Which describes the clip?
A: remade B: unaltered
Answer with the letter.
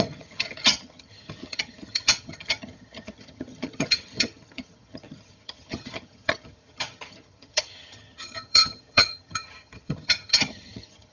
A